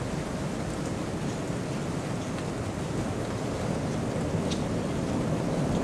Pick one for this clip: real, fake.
real